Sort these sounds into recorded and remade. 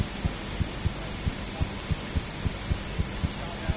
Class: recorded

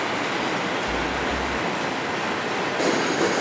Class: recorded